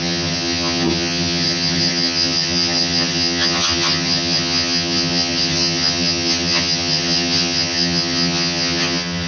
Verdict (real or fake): fake